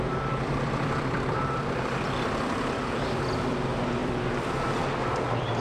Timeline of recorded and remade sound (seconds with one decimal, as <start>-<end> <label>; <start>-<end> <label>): 0.0-5.6 remade